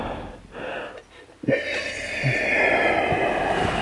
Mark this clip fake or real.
real